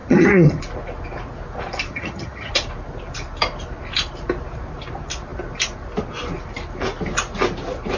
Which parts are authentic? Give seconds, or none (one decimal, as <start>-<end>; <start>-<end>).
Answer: 0.6-1.9; 2.5-8.0